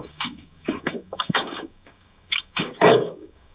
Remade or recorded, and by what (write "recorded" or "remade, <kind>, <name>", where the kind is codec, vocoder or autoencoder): remade, codec, DAC